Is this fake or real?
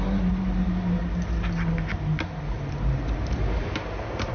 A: real